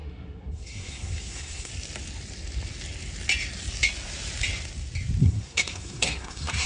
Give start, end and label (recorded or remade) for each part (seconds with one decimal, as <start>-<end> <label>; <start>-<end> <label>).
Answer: 0.0-1.7 remade; 1.7-5.2 recorded; 5.2-6.7 remade